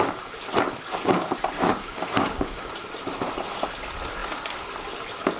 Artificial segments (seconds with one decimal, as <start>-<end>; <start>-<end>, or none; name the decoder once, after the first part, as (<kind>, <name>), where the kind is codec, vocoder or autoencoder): 1.7-2.7 (codec, DAC)